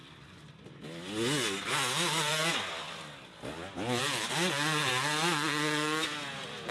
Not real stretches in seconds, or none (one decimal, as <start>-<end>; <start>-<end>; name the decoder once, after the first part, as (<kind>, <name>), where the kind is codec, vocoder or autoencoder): none